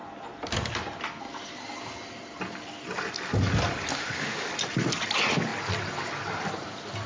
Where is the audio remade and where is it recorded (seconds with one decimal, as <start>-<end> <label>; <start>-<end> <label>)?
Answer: 0.0-3.9 recorded; 3.9-4.5 remade; 4.5-7.1 recorded